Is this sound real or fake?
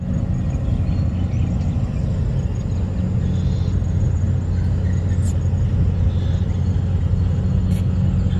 real